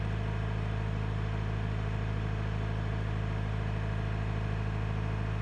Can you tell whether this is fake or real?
real